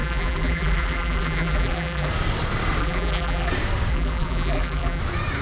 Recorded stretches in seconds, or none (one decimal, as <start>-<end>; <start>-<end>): 2.1-2.8; 3.5-3.9; 5.0-5.4